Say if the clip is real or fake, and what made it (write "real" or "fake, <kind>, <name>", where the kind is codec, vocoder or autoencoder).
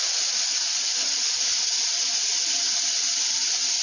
real